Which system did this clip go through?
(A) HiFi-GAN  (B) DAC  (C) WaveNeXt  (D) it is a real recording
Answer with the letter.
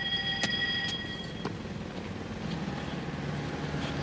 D